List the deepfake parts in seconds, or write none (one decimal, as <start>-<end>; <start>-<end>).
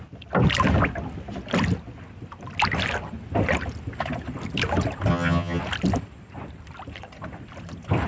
5.1-5.6